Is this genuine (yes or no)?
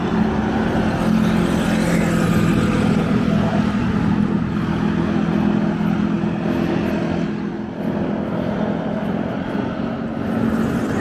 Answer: yes